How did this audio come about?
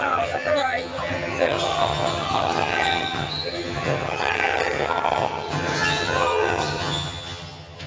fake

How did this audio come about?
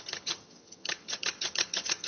fake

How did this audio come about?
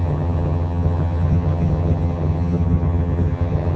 fake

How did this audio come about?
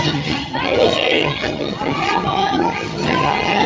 fake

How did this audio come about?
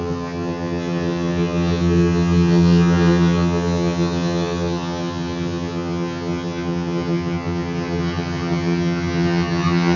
fake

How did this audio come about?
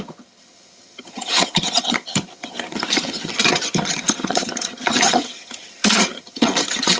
fake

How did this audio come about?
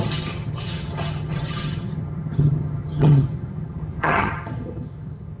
fake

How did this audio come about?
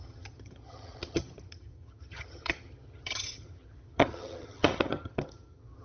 fake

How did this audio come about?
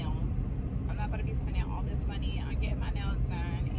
real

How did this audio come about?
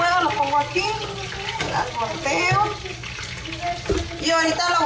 real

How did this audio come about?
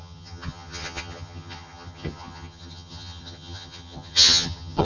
fake